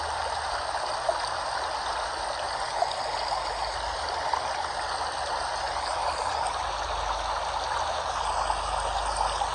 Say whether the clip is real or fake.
real